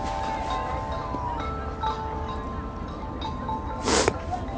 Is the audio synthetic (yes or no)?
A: no